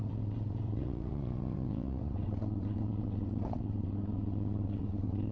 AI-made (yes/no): yes